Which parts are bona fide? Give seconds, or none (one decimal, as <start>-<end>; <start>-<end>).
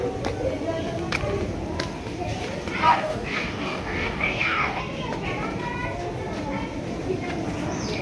0.0-2.9; 4.8-8.0